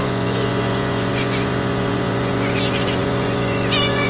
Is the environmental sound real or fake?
fake